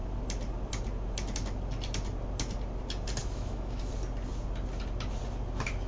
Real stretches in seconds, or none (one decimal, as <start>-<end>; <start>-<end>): 0.0-3.2; 3.9-5.9